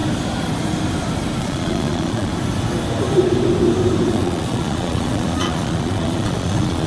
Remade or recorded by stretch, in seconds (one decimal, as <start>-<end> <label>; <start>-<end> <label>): 0.0-1.4 recorded; 1.4-2.3 remade; 2.3-4.1 recorded; 4.1-6.9 remade